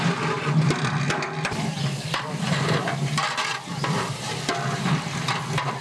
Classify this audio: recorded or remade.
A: recorded